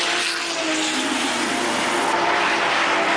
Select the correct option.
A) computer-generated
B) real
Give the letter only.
B